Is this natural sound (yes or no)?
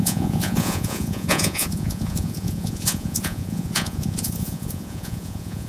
no